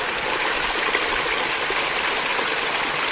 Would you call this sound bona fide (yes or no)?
yes